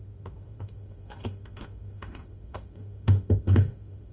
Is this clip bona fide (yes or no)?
no